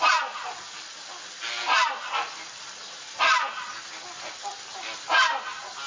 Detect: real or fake real